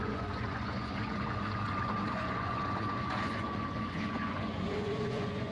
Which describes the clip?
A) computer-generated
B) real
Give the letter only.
A